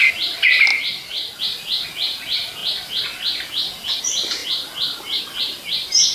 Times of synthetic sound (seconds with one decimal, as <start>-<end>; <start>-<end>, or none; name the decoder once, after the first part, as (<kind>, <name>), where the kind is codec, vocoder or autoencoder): none

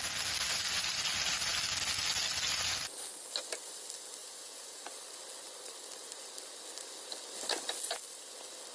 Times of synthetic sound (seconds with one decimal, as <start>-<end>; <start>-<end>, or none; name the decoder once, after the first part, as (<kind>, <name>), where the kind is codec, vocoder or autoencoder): 4.2-4.8 (vocoder, Vocos)